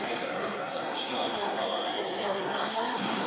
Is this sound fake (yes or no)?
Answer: yes